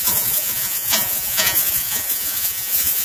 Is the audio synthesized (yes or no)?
yes